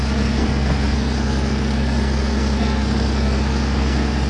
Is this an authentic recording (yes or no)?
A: no